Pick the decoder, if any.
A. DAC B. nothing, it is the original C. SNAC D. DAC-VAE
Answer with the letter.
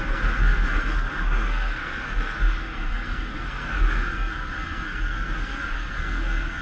C